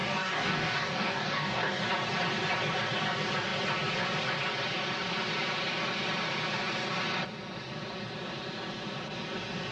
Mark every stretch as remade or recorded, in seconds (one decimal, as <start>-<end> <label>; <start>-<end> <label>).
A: 0.0-1.8 remade; 1.8-9.7 recorded